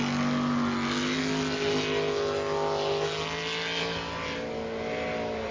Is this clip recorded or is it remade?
recorded